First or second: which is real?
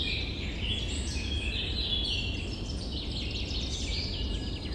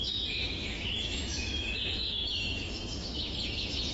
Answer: first